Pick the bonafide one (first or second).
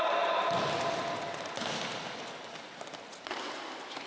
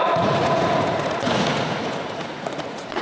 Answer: first